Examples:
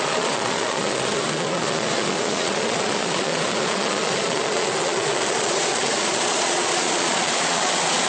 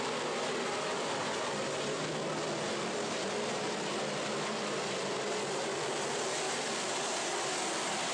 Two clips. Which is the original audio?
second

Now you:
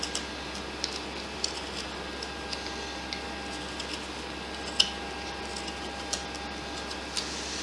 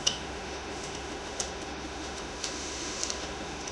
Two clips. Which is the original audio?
first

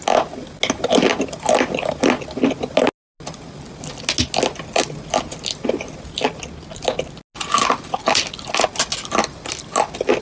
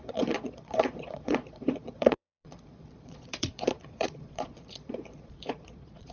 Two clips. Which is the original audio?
first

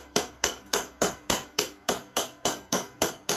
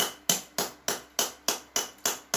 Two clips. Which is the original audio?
second